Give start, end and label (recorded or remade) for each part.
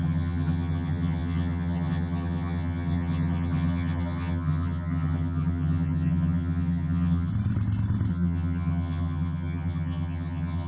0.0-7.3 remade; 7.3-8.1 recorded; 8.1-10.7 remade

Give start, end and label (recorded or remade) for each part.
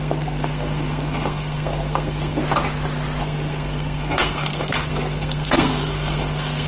0.0-2.4 remade; 2.4-3.2 recorded; 3.2-6.7 remade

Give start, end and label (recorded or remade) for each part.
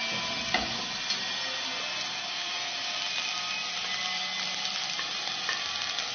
0.0-6.1 recorded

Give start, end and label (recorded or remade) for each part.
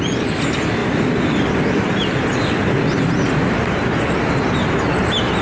0.0-0.8 recorded; 0.8-4.0 remade; 4.0-5.4 recorded